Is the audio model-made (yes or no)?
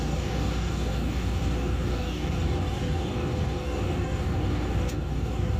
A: yes